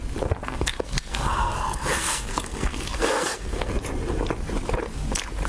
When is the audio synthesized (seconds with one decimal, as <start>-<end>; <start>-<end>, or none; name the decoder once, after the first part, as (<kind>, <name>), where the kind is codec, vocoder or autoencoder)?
0.4-3.7 (codec, SNAC)